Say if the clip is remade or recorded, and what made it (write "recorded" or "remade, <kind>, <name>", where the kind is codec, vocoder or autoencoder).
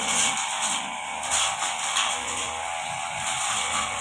recorded